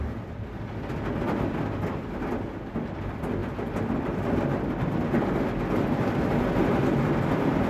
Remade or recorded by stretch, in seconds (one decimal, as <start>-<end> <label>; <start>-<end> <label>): 0.0-7.7 recorded